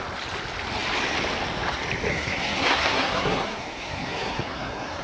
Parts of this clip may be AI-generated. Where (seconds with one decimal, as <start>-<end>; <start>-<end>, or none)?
2.1-5.0